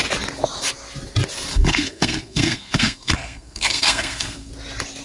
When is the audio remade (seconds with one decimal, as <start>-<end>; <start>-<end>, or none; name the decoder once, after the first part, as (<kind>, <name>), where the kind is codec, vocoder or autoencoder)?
1.5-4.5 (codec, SNAC)